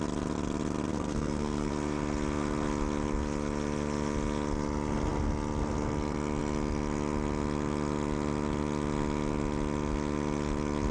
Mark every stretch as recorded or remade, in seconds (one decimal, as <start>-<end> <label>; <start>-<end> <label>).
0.0-0.9 recorded; 0.9-1.7 remade; 1.7-10.9 recorded